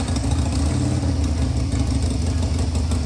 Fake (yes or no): no